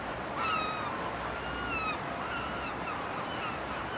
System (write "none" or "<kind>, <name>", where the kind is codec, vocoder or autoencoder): none